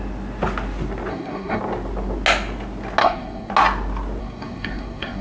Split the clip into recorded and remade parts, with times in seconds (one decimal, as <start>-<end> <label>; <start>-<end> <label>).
0.0-1.1 recorded; 1.1-1.6 remade; 1.6-3.0 recorded; 3.0-3.5 remade; 3.5-4.2 recorded; 4.2-5.2 remade